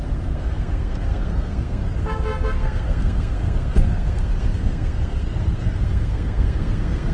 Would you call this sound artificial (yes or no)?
yes